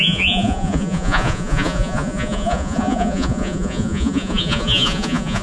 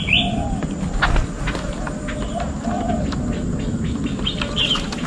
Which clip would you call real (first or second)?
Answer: second